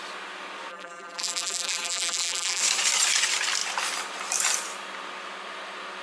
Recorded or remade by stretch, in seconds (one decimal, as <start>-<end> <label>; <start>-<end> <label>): 0.0-0.7 recorded; 0.7-2.6 remade; 2.6-6.0 recorded